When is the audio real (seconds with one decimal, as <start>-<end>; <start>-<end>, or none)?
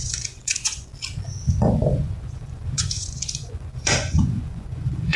0.9-1.5